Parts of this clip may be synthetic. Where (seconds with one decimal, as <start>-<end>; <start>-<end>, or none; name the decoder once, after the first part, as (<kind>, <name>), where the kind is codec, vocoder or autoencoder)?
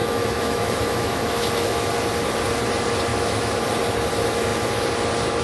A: 0.0-1.9 (autoencoder, DAC-VAE); 3.1-3.6